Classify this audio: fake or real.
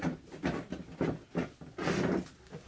real